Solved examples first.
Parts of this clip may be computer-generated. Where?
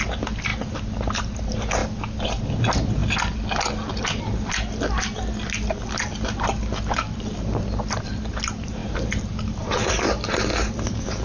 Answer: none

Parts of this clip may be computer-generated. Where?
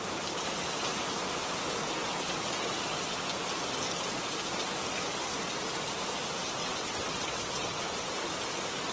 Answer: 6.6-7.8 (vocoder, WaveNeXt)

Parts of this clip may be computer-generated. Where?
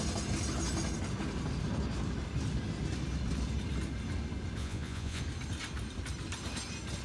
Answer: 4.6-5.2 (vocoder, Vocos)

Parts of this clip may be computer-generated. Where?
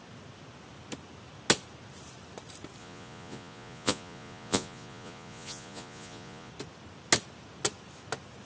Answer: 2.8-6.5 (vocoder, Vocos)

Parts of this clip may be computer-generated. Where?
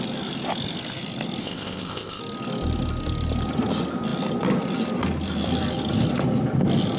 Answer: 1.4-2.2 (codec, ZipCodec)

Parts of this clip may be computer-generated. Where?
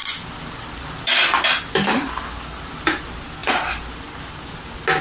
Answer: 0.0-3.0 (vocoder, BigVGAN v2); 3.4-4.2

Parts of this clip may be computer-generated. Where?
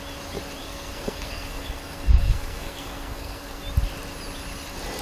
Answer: 0.6-3.6 (codec, SNAC)